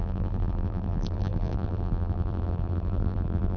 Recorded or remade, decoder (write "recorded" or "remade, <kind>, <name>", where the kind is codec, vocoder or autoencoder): remade, vocoder, BigVGAN v2